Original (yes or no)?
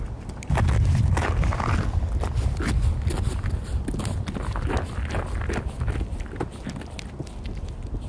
yes